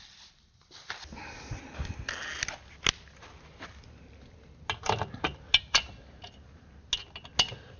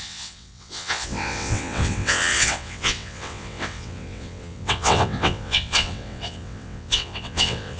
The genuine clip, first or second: first